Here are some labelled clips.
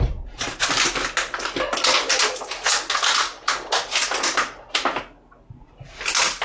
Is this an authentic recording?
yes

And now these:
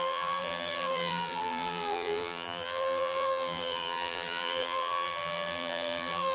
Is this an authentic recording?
no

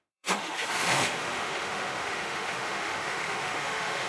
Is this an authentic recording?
no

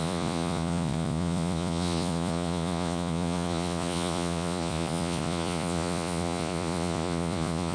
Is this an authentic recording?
no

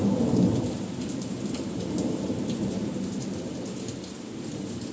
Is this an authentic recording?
no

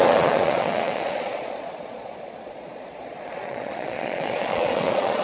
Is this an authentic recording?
no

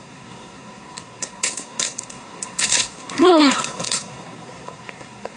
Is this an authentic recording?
no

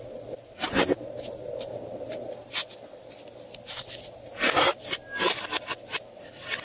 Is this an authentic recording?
yes